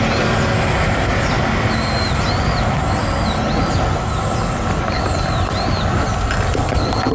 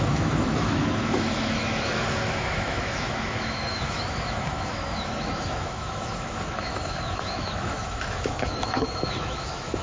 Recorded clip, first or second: first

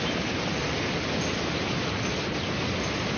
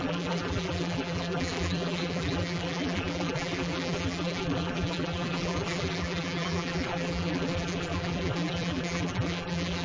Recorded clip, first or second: first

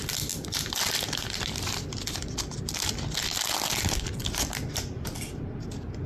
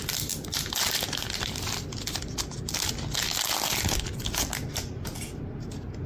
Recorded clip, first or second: second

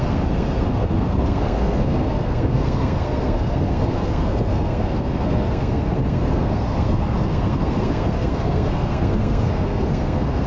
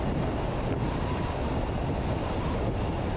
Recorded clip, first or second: second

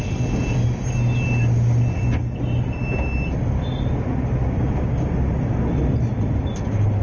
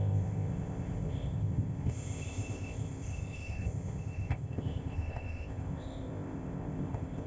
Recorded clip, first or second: first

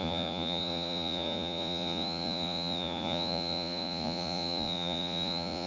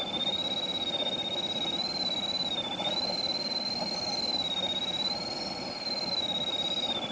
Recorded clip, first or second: second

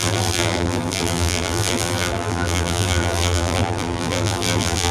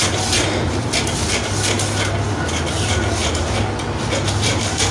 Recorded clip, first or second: second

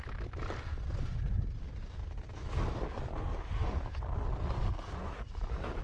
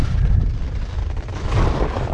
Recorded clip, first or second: first